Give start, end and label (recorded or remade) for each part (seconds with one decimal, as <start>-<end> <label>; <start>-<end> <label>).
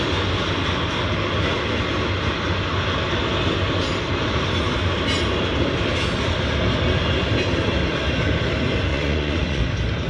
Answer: 0.0-8.9 recorded; 8.9-9.6 remade; 9.6-10.1 recorded